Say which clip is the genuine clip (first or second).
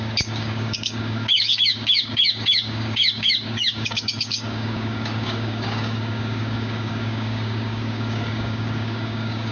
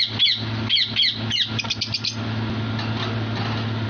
second